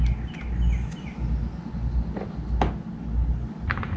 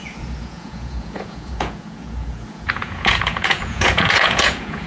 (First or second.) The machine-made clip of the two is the second